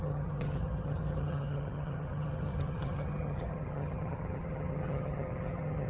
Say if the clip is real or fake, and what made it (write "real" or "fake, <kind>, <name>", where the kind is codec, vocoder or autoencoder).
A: fake, vocoder, HiFi-GAN